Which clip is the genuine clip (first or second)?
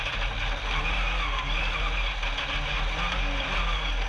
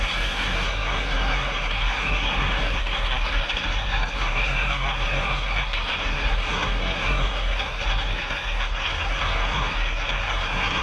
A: first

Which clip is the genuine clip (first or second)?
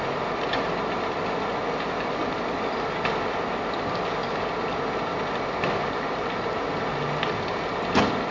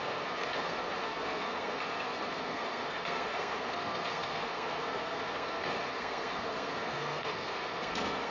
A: first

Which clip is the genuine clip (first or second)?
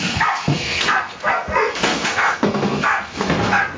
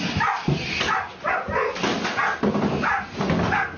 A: second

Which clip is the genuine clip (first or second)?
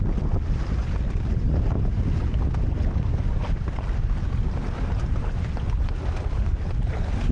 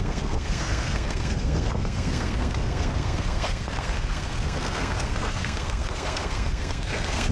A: first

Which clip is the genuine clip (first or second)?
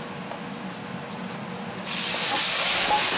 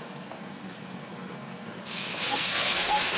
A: first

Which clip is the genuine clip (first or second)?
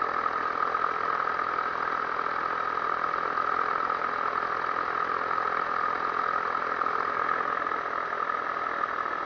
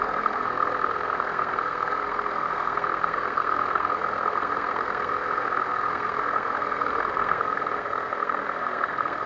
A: first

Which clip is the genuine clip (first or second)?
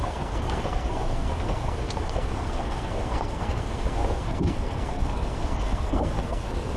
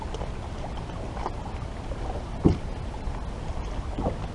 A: second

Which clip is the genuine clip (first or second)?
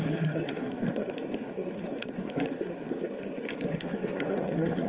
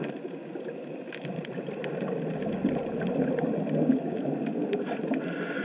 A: second